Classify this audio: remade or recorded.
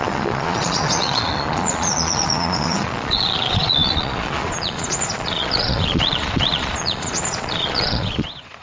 remade